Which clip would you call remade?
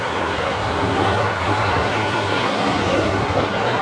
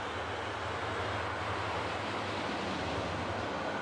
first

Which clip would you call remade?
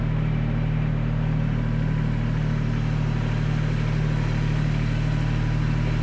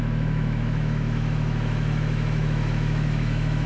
second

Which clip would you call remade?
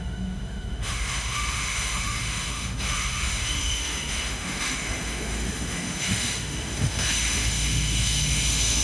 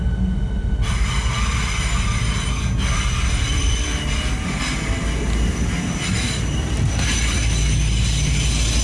first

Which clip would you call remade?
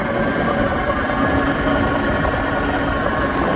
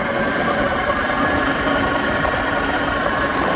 second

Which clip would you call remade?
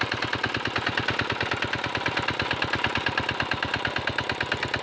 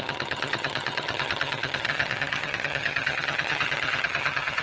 second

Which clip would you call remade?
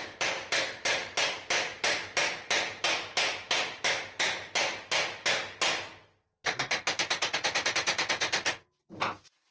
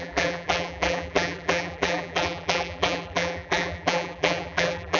second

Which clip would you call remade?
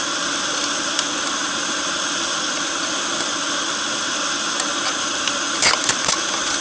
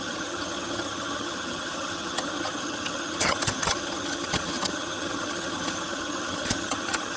second